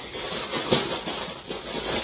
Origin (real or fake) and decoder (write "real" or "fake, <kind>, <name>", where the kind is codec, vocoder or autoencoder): real